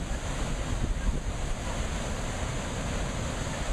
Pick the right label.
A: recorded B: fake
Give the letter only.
A